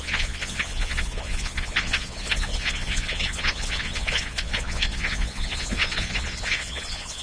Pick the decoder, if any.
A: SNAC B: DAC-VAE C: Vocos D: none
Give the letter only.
C